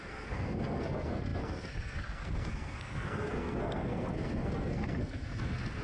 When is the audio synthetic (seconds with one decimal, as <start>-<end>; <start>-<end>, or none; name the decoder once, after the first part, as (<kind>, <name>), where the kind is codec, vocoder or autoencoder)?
0.0-5.8 (codec, SNAC)